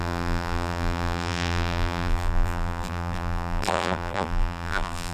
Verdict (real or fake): fake